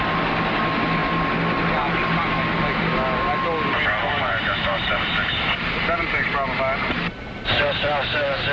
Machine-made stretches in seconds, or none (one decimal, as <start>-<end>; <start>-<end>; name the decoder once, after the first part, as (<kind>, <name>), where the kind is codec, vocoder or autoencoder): 4.0-5.1 (vocoder, BigVGAN v2)